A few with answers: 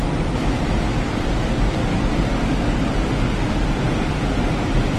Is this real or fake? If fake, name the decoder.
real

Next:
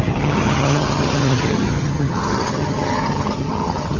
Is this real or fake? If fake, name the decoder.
fake, vocoder, HiFi-GAN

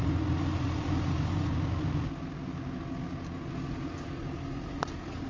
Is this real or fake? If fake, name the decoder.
real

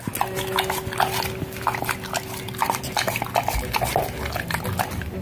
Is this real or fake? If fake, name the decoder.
real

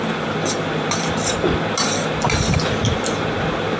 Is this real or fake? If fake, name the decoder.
real